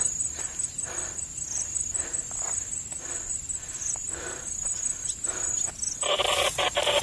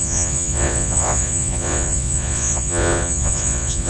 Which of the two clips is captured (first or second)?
first